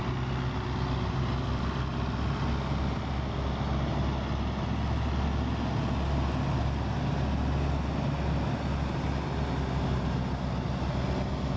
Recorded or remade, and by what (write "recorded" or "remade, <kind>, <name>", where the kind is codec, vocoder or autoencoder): recorded